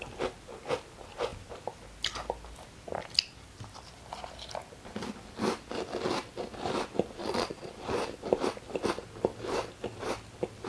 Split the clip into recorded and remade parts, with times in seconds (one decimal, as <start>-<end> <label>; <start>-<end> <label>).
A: 0.0-7.2 recorded; 7.2-7.7 remade; 7.7-10.7 recorded